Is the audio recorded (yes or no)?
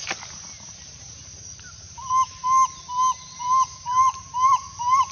no